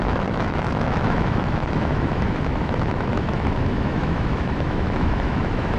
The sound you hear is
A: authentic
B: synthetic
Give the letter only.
B